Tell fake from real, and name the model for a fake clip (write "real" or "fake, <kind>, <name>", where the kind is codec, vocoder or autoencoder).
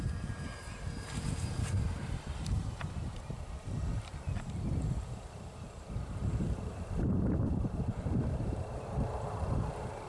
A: fake, vocoder, BigVGAN v2